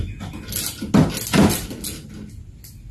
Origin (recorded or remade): recorded